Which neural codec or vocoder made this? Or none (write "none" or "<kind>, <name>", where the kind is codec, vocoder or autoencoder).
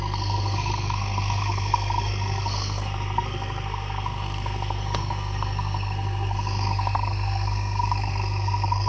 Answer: codec, SNAC